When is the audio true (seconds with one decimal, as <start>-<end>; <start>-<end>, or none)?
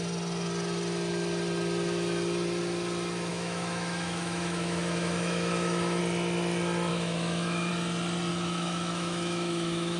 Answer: 0.0-3.3; 6.0-6.9; 7.7-8.3